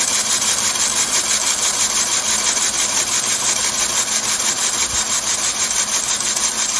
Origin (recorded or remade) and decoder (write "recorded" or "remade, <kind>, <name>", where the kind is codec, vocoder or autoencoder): recorded